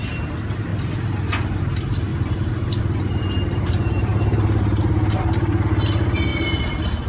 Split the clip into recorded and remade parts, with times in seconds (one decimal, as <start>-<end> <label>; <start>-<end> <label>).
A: 0.0-7.1 recorded